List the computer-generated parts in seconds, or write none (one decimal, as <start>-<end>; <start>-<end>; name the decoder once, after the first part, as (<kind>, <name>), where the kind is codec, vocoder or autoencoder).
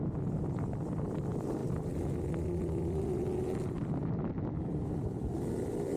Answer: none